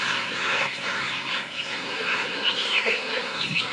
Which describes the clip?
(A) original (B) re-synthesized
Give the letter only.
B